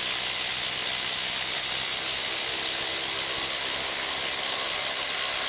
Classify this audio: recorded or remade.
recorded